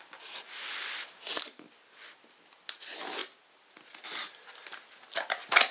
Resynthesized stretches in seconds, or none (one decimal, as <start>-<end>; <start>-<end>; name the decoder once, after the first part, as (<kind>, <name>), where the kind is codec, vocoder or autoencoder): none